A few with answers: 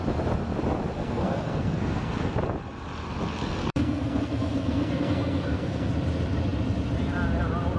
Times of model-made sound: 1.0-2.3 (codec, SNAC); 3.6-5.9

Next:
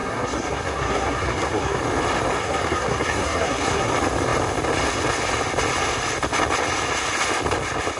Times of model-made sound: 0.0-1.8 (codec, SNAC); 2.4-3.9

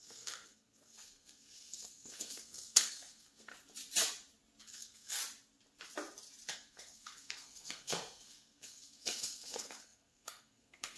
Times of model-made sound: 0.0-3.5 (codec, SNAC); 4.6-5.2; 6.5-11.0

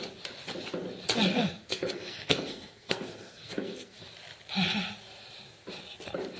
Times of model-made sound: 1.3-4.0 (codec, SNAC)

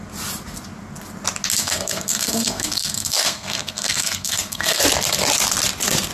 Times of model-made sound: 1.6-4.8 (codec, SNAC)

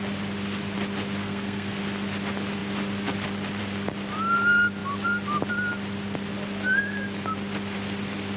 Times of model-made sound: 1.2-1.8 (codec, SNAC)

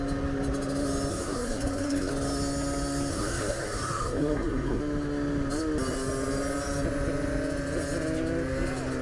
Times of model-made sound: 1.1-2.1 (codec, SNAC); 3.1-4.8